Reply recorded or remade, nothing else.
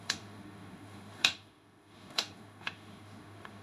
remade